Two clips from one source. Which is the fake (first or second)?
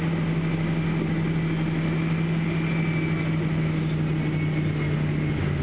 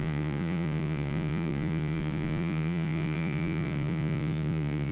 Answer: second